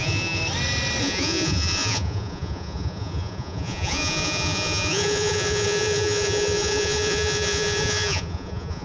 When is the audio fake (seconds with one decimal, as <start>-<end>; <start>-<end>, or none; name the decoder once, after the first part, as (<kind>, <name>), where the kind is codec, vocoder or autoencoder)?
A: 0.0-0.4 (vocoder, Vocos); 1.0-8.8